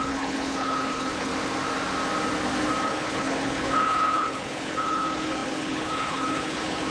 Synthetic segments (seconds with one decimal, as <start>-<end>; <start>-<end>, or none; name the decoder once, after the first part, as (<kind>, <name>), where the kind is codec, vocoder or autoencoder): 0.0-1.3 (codec, HILCodec); 2.8-6.9